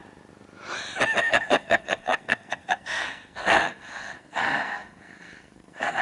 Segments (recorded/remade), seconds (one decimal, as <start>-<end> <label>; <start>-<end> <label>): 0.0-1.2 recorded; 1.2-6.0 remade